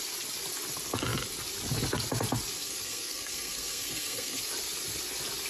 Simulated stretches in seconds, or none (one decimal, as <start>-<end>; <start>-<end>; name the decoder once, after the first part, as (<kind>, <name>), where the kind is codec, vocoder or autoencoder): 2.6-4.4 (codec, SNAC)